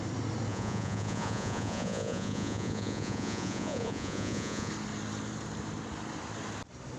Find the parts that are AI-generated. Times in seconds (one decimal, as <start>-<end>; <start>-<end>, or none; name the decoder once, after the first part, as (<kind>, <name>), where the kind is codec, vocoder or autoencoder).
0.5-4.7 (vocoder, Vocos)